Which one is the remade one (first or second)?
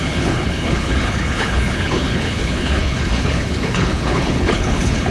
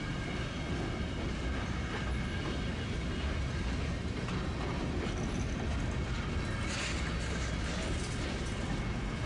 first